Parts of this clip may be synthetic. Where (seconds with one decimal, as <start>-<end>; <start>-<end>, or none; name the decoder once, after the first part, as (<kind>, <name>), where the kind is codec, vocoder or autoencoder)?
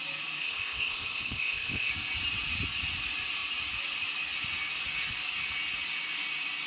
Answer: 0.4-1.9 (codec, ZipCodec)